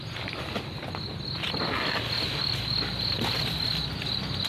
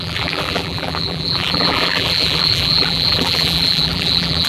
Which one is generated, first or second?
second